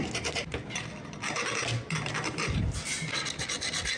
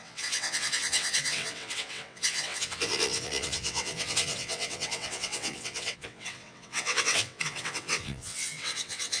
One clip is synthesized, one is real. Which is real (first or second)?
first